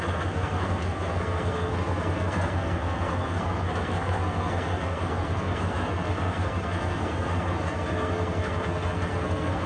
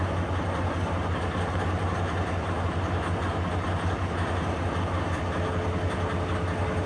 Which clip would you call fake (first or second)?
first